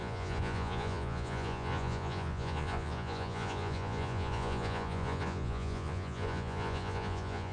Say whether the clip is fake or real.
fake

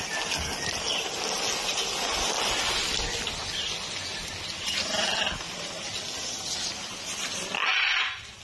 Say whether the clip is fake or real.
real